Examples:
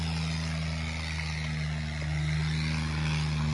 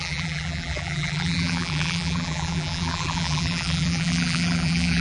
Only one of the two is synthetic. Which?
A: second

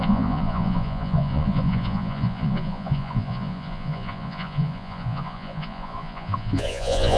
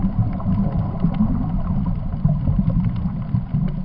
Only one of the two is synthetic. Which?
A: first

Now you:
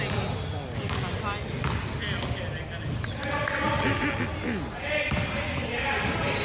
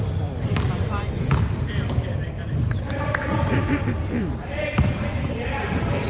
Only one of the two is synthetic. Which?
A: second